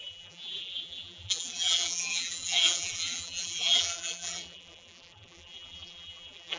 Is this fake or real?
fake